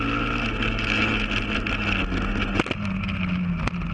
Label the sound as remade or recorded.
recorded